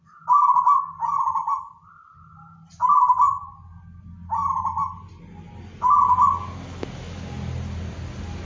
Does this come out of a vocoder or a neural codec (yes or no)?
no